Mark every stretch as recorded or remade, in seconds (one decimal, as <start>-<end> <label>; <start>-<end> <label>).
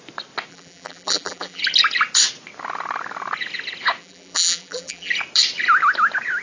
0.0-0.5 recorded; 0.5-1.6 remade; 1.6-4.0 recorded; 4.0-5.1 remade; 5.1-6.4 recorded